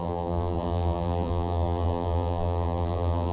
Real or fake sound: fake